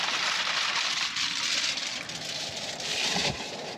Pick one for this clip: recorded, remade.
recorded